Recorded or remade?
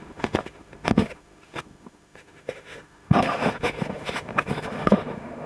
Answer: remade